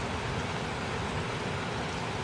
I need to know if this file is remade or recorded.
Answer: recorded